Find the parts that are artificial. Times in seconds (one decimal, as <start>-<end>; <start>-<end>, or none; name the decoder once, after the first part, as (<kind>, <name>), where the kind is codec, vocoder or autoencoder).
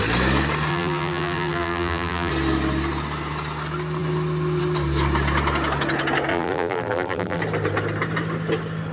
0.7-2.3 (vocoder, BigVGAN v2); 6.3-7.4